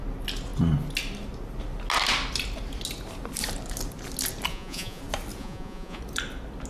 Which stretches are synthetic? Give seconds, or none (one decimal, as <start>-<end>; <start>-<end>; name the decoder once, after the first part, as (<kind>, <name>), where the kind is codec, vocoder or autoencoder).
4.5-5.0 (vocoder, Vocos); 5.4-6.0